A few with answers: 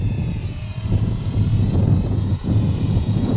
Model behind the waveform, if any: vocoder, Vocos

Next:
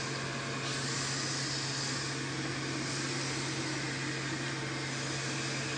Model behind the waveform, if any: none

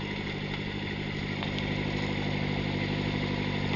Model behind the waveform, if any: none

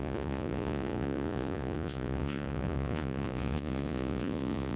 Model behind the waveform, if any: vocoder, Vocos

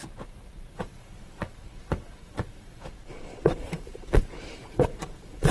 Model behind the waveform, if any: vocoder, Vocos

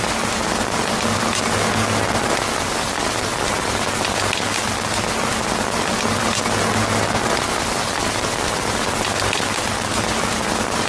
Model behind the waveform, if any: none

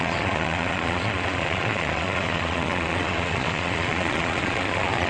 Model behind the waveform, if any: vocoder, Vocos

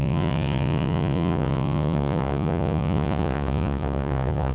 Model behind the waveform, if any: vocoder, Vocos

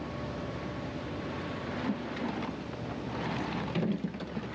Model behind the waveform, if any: none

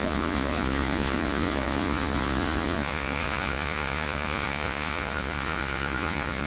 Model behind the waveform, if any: vocoder, Vocos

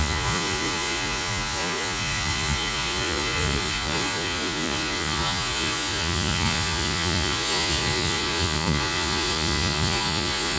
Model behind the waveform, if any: vocoder, Vocos